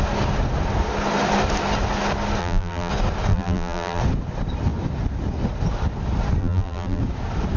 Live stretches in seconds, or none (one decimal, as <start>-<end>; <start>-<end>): 0.0-2.4; 2.9-3.3; 4.0-6.4; 7.0-7.6